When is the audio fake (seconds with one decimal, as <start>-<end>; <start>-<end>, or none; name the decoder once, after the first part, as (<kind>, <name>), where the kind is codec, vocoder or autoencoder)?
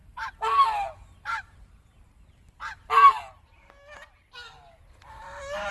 none